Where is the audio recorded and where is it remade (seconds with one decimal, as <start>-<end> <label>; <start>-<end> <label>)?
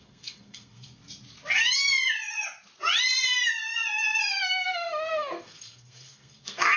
0.0-1.0 remade; 1.0-4.4 recorded; 4.4-6.8 remade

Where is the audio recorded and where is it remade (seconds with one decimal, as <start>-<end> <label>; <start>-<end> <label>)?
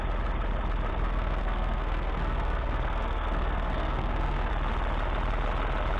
0.0-0.9 recorded; 0.9-4.5 remade; 4.5-6.0 recorded